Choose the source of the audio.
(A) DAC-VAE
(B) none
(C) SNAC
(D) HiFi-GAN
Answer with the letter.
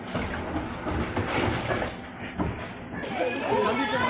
B